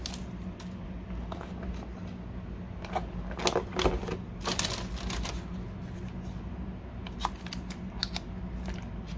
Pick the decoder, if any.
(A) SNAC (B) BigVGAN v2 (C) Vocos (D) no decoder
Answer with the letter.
D